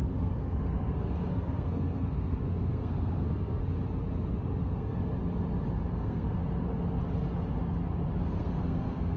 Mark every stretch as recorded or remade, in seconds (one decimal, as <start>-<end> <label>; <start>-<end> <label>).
0.0-3.6 remade; 3.6-4.6 recorded; 4.6-5.0 remade; 5.0-5.9 recorded; 5.9-6.4 remade; 6.4-8.2 recorded; 8.2-9.2 remade